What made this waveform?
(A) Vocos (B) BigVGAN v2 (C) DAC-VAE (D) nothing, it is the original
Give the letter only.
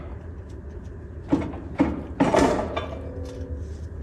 D